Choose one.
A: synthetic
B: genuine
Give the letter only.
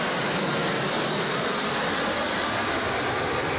B